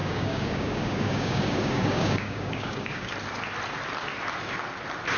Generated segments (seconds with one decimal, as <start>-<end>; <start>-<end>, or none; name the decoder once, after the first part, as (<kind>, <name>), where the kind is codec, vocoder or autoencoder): 0.0-3.1 (codec, DAC)